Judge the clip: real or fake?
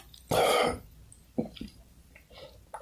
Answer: real